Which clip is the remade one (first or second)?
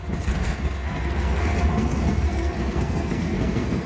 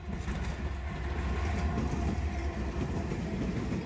first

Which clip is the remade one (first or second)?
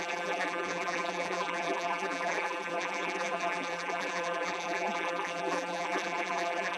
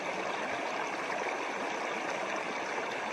first